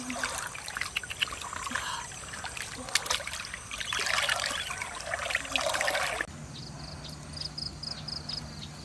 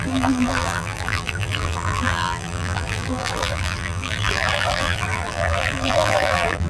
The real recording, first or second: first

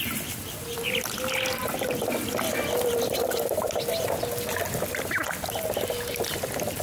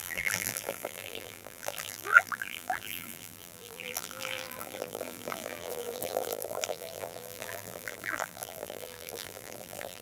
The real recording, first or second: first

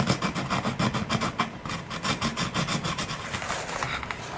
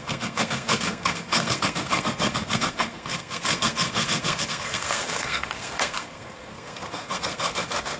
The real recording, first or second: first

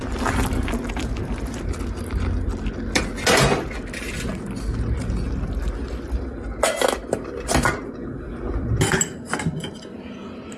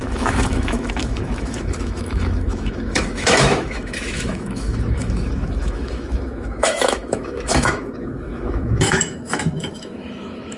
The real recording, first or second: first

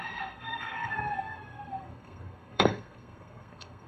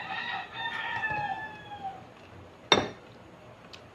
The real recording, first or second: second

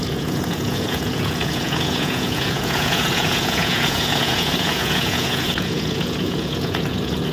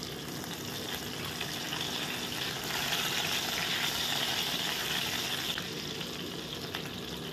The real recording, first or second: second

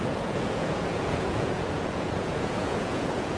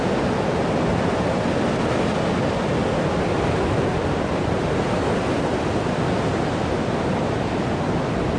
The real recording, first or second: second